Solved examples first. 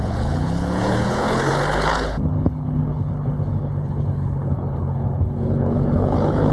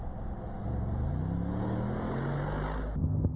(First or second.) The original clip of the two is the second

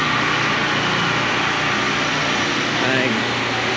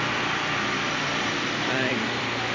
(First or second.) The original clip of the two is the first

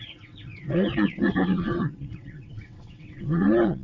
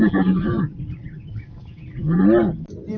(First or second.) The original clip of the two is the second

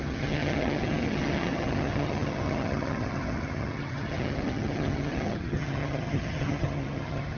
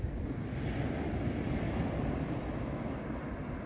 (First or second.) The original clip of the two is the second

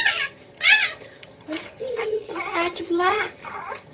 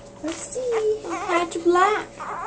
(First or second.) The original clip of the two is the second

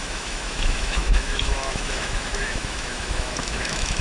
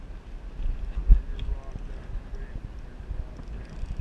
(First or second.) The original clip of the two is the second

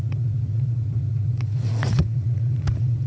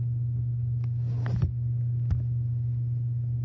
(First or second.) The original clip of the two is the second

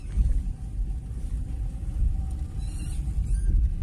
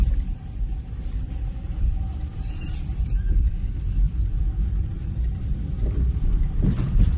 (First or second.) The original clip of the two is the first